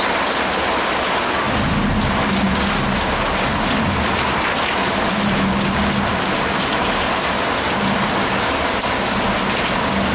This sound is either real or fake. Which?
real